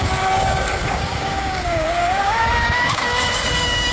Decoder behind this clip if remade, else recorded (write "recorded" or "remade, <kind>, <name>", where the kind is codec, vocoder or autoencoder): remade, codec, DAC